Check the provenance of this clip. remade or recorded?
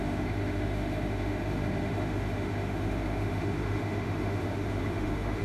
remade